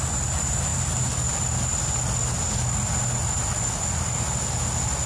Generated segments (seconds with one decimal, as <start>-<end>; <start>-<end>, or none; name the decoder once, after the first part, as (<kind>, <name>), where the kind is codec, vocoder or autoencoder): none